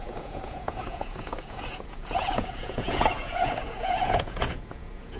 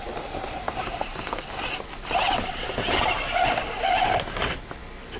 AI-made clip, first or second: first